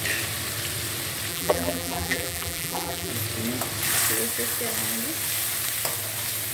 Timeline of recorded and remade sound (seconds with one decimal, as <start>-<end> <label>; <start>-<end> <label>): 0.0-1.3 recorded; 1.3-3.1 remade; 3.1-6.5 recorded